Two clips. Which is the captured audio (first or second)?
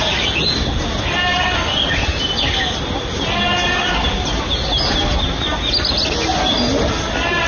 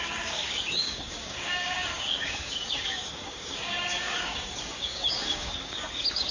first